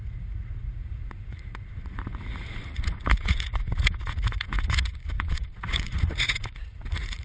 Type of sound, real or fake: fake